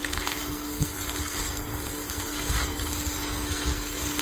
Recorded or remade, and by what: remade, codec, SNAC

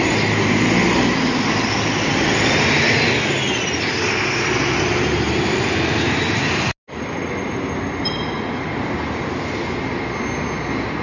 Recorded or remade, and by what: recorded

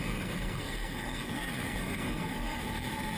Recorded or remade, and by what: remade, codec, SNAC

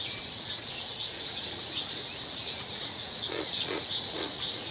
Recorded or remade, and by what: remade, vocoder, Vocos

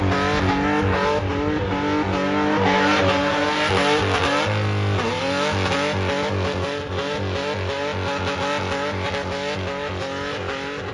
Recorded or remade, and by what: recorded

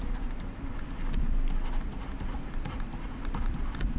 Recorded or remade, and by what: recorded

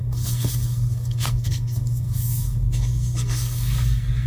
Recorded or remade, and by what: remade, codec, SNAC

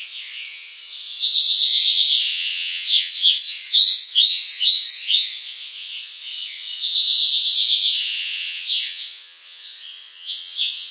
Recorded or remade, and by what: remade, vocoder, Vocos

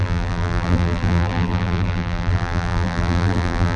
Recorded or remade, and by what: remade, vocoder, BigVGAN v2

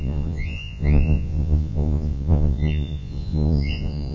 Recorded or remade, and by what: remade, vocoder, Vocos